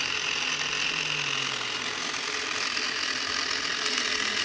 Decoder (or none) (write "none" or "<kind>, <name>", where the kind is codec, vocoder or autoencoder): none